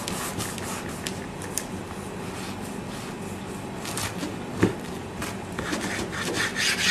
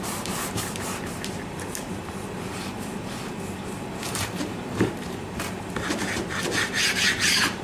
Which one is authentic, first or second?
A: first